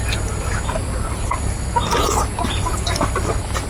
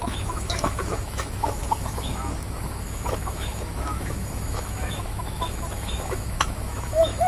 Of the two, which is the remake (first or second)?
second